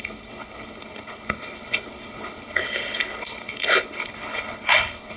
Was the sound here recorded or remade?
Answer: remade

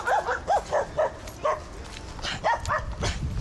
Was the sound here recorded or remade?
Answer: recorded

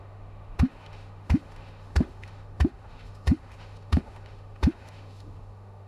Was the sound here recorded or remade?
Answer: remade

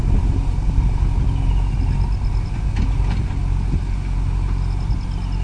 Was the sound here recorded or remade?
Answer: recorded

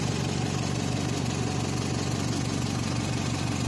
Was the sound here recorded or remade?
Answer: recorded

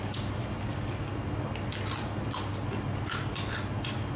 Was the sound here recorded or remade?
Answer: recorded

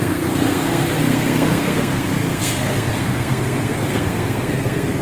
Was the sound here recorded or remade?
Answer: remade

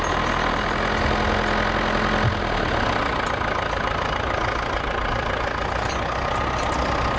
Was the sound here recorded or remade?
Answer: recorded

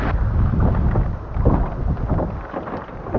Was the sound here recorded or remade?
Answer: recorded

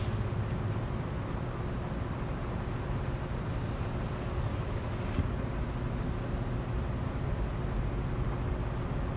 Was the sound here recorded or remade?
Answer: recorded